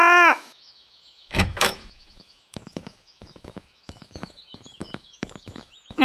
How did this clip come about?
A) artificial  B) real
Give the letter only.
A